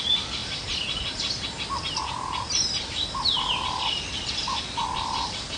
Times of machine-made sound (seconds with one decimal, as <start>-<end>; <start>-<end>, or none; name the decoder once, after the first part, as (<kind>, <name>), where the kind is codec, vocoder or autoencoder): none